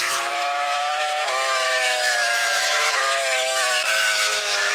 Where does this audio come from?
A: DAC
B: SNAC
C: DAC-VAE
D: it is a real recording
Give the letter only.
C